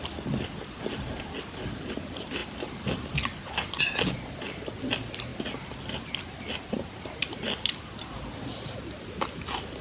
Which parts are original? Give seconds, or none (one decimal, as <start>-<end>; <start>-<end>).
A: 0.0-9.8